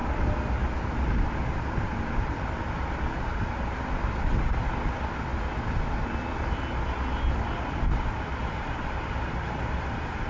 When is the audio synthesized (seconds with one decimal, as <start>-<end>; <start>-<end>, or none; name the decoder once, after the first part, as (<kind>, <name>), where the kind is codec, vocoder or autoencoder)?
none